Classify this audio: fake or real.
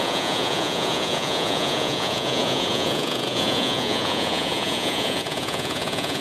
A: fake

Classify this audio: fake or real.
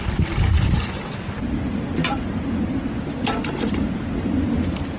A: real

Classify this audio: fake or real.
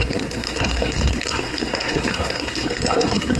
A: fake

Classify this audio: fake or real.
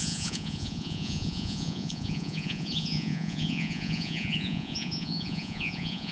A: fake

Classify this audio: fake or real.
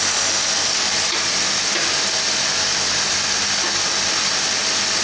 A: real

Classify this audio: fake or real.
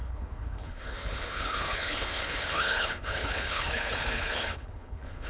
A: fake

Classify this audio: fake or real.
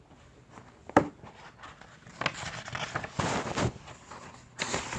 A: real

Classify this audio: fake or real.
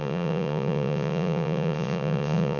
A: fake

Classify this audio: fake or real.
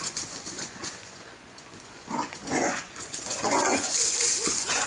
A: fake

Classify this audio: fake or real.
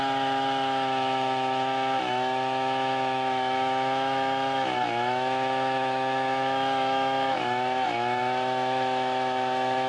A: fake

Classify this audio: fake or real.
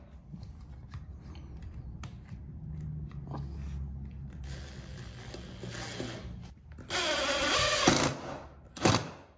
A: real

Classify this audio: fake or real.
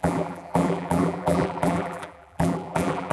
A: fake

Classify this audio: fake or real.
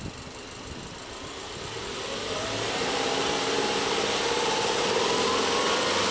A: fake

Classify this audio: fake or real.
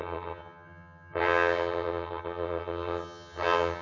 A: fake